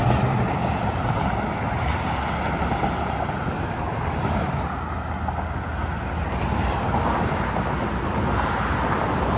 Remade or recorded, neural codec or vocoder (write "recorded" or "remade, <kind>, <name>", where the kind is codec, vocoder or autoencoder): recorded